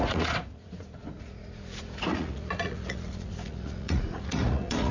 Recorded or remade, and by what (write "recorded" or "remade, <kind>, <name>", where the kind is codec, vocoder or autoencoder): remade, vocoder, Vocos